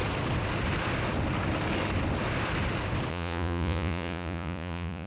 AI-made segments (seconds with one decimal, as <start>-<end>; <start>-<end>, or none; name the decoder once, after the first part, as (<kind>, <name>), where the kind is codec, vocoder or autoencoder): 3.1-5.1 (vocoder, Vocos)